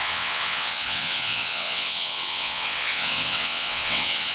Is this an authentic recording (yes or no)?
no